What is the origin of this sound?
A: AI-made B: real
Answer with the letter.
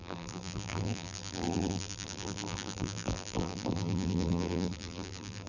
A